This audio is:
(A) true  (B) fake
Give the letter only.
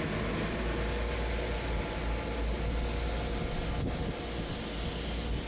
A